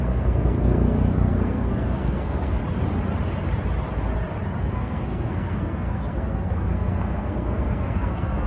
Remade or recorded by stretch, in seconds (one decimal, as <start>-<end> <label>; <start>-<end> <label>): 0.0-2.6 remade; 2.6-4.6 recorded; 4.6-8.5 remade